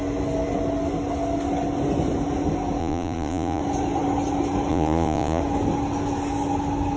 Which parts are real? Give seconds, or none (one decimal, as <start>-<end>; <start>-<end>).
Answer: 0.0-2.8; 3.6-4.7; 5.4-7.0